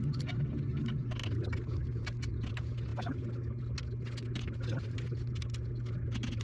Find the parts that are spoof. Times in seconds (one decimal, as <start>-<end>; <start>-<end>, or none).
none